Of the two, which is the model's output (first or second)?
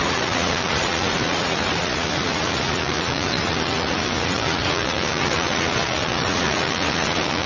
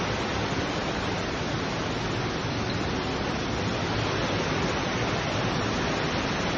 first